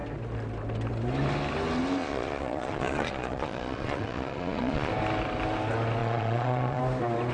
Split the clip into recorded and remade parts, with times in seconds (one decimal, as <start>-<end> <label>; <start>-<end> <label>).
0.0-2.0 recorded; 2.0-4.9 remade; 4.9-6.0 recorded; 6.0-6.8 remade; 6.8-7.3 recorded